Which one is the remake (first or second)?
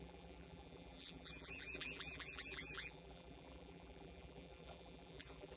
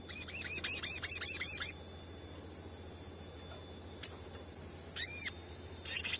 first